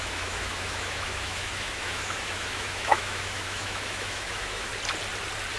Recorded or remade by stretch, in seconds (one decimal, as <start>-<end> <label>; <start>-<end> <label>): 0.0-4.7 remade; 4.7-5.6 recorded